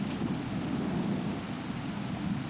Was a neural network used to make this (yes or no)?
no